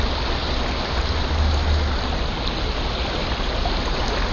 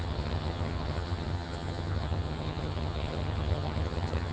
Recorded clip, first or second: first